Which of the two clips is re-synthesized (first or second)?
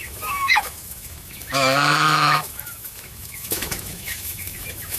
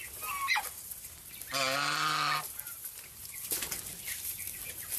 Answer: first